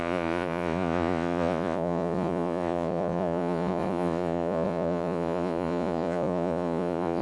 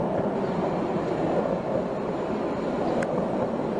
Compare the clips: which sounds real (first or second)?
second